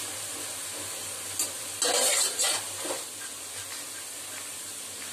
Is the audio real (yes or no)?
yes